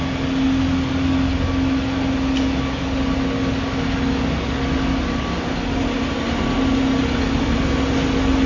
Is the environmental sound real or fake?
real